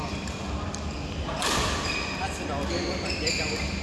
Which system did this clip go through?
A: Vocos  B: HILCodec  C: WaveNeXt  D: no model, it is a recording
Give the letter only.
D